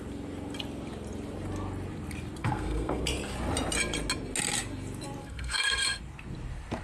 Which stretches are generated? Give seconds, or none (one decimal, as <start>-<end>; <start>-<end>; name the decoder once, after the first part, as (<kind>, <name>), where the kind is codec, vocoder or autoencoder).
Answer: 2.4-3.0 (codec, SNAC); 5.2-6.0